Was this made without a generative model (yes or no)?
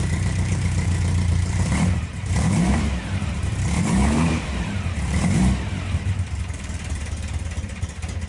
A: no